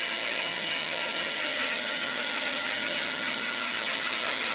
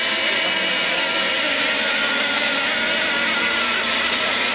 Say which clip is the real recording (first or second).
second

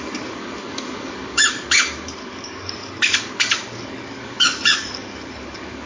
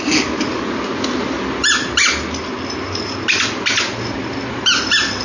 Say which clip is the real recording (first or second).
second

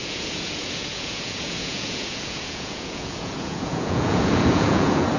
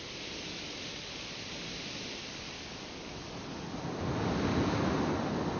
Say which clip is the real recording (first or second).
second